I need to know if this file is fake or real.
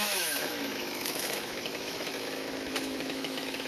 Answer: fake